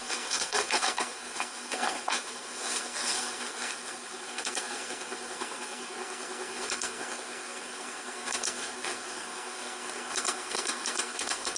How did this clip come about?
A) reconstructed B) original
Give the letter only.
A